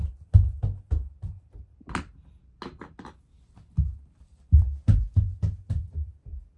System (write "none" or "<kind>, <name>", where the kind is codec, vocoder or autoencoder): none